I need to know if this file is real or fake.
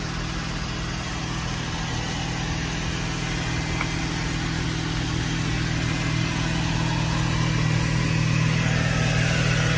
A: real